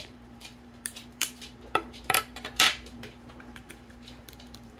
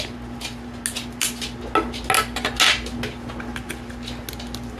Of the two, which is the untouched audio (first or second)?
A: second